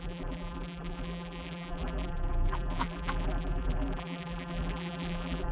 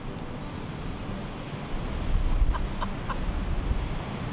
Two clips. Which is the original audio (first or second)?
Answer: second